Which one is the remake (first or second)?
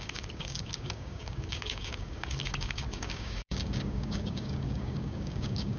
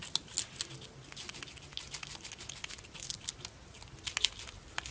first